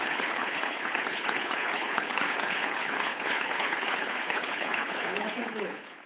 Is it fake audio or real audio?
fake